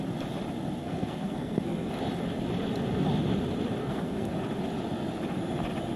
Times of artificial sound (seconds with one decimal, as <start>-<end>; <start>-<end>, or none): 0.8-1.9; 3.8-4.3